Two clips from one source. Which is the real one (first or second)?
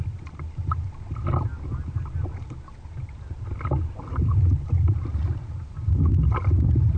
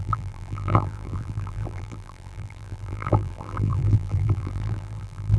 first